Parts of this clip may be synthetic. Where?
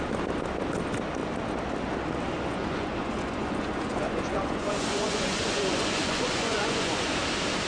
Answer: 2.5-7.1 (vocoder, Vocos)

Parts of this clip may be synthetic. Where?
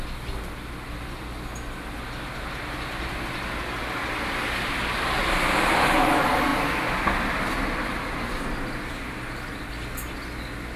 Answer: none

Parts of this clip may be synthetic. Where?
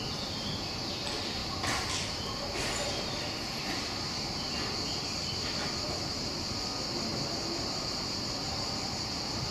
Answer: none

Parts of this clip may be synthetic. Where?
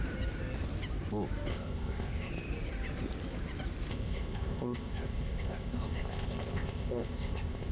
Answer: 1.5-2.3 (codec, ZipCodec); 3.9-7.7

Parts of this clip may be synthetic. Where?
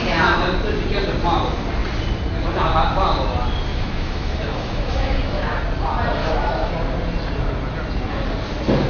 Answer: 3.7-5.6 (autoencoder, DAC-VAE); 6.2-6.7